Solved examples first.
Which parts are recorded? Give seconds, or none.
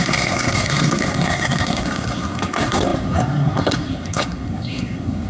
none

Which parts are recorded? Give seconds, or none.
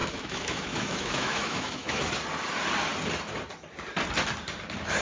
2.1-5.0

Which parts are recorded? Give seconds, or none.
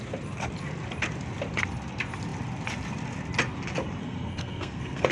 0.0-4.0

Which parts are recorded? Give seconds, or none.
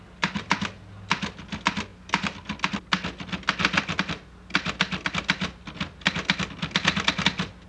0.0-7.7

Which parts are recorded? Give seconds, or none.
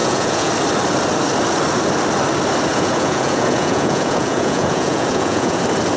0.5-2.7; 5.6-6.0